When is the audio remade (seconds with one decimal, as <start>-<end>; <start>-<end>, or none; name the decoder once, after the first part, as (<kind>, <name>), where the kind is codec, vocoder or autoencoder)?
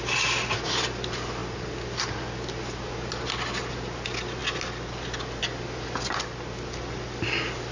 none